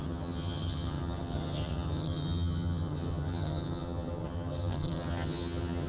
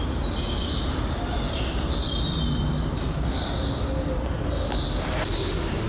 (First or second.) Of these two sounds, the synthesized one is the first